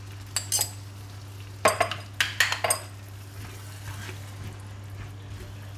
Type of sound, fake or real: real